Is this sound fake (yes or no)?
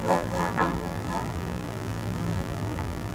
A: yes